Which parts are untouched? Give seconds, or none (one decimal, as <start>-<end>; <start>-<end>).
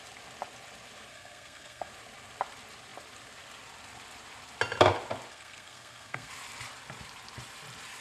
0.0-1.1; 1.9-5.3; 6.3-8.0